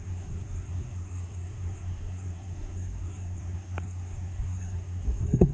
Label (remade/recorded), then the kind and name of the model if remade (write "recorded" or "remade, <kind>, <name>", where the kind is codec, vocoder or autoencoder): remade, codec, SNAC